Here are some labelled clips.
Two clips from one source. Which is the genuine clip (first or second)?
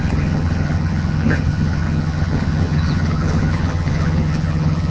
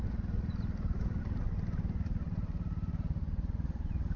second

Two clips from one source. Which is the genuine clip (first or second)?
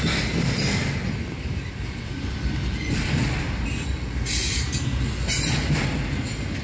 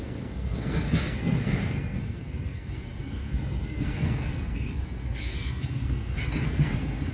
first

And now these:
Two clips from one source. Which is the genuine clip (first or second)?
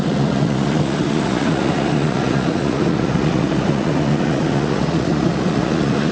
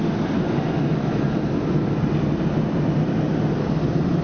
second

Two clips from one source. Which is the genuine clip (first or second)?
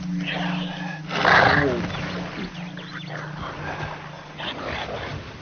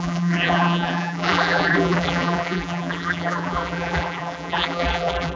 first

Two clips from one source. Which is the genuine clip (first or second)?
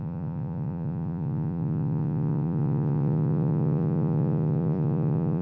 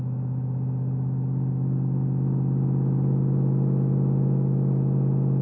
second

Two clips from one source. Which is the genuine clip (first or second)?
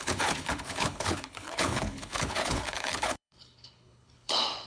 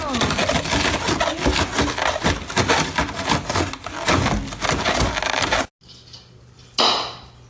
second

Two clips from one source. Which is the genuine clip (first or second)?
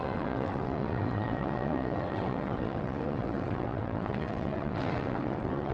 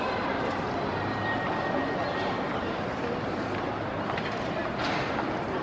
second